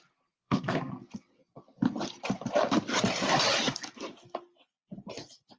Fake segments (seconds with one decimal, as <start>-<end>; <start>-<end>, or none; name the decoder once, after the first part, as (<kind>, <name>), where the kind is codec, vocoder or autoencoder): 0.4-0.9 (codec, SNAC)